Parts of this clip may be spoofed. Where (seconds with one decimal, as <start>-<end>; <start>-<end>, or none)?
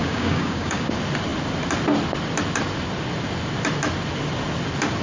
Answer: 0.0-0.9